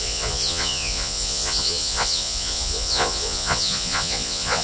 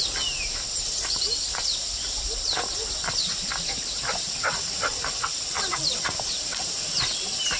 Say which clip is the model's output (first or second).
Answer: first